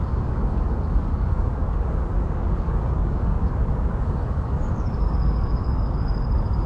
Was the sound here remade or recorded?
remade